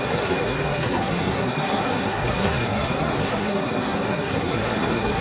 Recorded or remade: remade